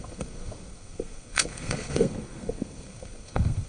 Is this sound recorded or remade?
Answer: remade